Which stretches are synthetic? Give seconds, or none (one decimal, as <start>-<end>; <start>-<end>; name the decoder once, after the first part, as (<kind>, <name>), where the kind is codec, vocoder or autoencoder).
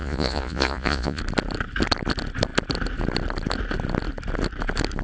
0.0-1.2 (vocoder, Vocos)